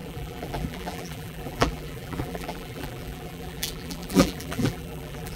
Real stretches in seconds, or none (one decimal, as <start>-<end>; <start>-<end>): none